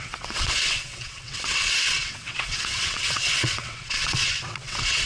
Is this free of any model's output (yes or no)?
no